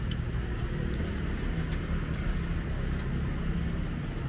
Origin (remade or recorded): recorded